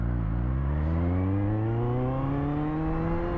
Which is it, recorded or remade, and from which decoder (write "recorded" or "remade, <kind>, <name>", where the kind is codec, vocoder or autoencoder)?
recorded